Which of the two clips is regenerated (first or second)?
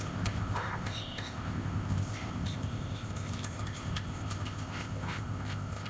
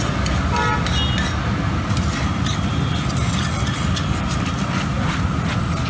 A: first